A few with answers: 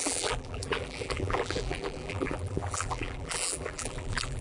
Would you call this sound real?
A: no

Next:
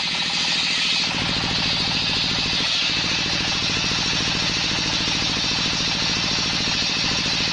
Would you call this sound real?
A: yes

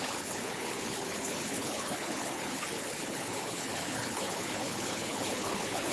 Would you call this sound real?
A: no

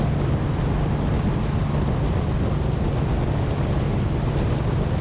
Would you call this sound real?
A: yes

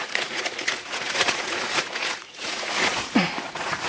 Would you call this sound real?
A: no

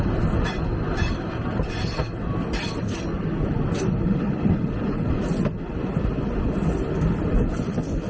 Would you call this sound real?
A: yes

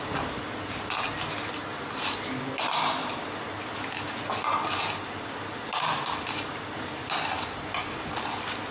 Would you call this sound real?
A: yes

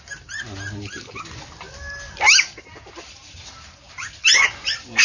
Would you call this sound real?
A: yes